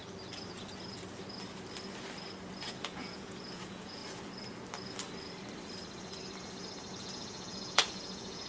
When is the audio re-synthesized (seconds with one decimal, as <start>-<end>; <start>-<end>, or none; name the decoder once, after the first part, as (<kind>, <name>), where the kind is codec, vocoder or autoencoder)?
2.7-4.0 (vocoder, Vocos); 6.9-8.5